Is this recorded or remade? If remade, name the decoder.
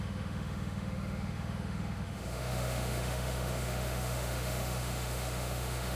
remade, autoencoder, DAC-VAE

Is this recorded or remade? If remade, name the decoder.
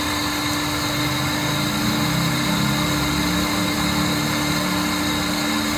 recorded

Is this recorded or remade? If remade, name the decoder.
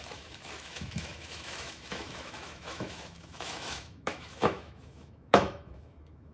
remade, autoencoder, DAC-VAE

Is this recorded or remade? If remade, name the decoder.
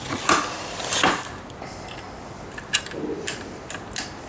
recorded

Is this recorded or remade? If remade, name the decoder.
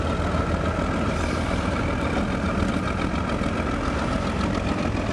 recorded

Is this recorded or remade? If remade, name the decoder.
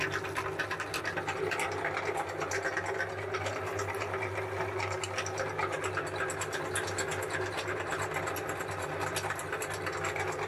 recorded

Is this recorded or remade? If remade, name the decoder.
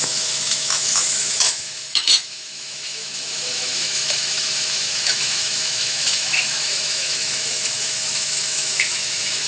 remade, autoencoder, DAC-VAE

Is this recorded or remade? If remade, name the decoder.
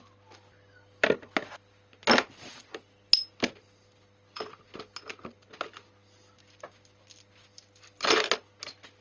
recorded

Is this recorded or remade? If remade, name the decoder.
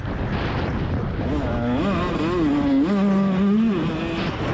recorded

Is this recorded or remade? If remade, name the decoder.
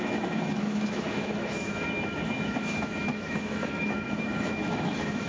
remade, autoencoder, DAC-VAE